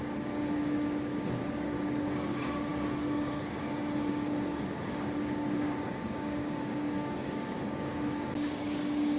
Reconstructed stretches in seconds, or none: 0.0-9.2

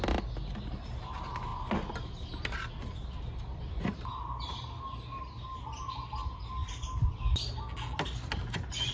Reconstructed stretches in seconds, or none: none